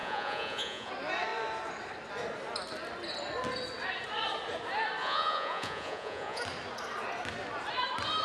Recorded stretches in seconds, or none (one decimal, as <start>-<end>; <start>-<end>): 0.9-5.0; 6.4-8.2